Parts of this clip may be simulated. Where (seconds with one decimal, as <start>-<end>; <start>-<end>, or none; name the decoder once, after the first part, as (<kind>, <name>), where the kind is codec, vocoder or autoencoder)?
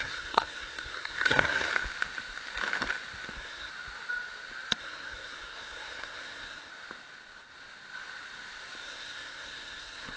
0.0-1.7 (codec, SNAC); 3.3-3.7; 4.8-6.7; 8.8-10.2